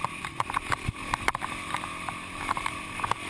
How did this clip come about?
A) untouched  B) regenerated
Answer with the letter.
B